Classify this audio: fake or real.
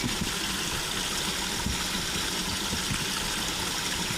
real